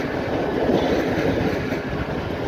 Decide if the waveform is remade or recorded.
recorded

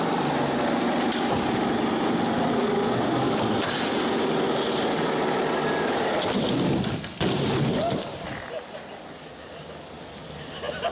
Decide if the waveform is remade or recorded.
recorded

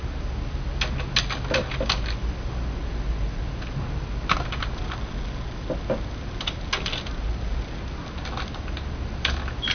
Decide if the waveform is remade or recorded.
recorded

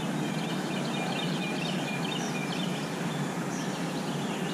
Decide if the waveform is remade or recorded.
recorded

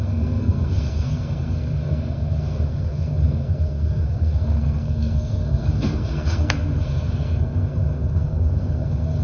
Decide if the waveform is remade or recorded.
remade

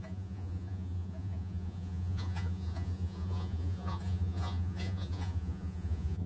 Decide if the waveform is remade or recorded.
remade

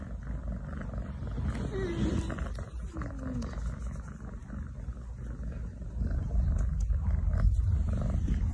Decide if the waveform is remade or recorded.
recorded